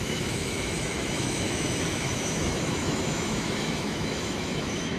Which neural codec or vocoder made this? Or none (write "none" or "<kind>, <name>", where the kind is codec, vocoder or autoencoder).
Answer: autoencoder, DAC-VAE